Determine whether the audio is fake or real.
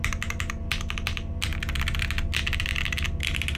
real